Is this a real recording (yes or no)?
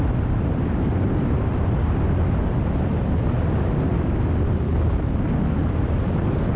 yes